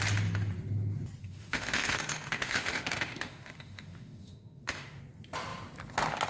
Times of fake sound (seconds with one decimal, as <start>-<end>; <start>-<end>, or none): 1.2-5.0